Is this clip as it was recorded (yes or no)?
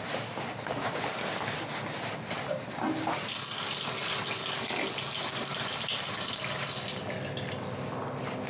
yes